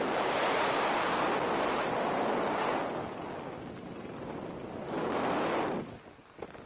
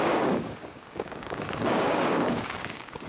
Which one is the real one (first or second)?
first